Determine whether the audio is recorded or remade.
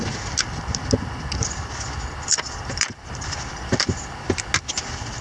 recorded